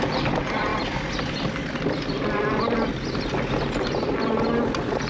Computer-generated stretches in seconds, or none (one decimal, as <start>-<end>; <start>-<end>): none